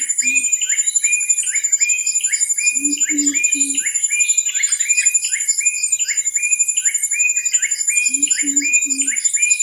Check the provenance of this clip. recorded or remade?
remade